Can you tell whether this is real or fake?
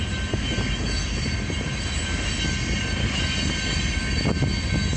real